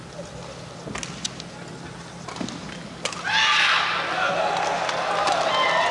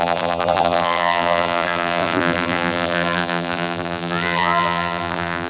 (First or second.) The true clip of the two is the first